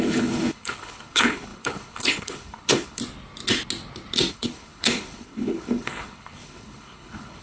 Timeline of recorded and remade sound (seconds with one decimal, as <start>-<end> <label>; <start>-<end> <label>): 0.0-3.0 remade; 3.0-4.3 recorded; 4.3-7.4 remade